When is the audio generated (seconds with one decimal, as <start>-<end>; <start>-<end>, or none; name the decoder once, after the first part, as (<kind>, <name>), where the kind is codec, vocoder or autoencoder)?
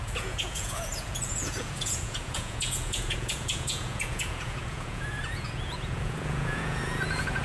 0.0-7.4 (vocoder, Vocos)